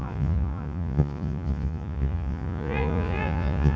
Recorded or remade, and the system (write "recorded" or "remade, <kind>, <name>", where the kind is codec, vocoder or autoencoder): remade, vocoder, Vocos